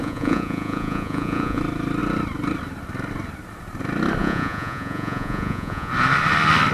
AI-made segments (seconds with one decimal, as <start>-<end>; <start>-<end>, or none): 0.0-1.6; 4.2-5.9